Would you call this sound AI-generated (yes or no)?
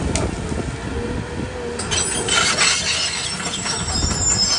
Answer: no